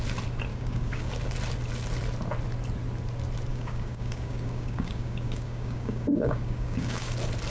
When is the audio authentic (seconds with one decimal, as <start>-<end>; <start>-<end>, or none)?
0.0-0.5; 1.1-3.5; 7.1-7.5